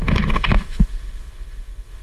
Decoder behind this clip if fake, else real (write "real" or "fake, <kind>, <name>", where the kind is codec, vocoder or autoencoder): fake, autoencoder, DAC-VAE